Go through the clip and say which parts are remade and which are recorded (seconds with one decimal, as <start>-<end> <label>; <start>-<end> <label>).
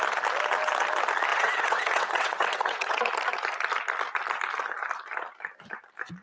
0.0-1.3 recorded; 1.3-3.0 remade; 3.0-6.2 recorded